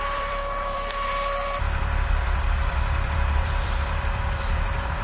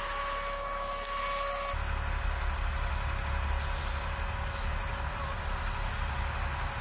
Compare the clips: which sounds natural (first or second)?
second